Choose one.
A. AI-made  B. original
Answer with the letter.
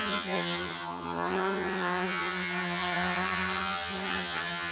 A